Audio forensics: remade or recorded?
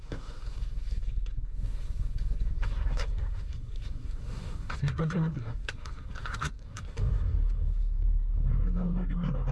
remade